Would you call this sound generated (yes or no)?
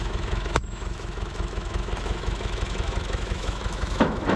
yes